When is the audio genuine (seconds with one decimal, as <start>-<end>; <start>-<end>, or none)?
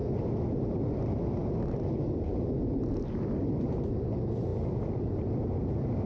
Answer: 0.9-4.5; 5.3-6.1